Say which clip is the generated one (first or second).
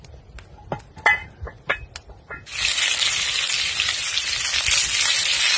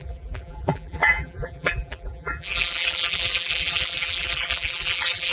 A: second